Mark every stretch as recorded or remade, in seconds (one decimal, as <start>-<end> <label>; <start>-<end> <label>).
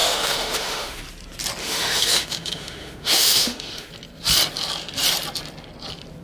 0.0-1.0 remade; 1.0-1.6 recorded; 1.6-3.9 remade; 3.9-6.2 recorded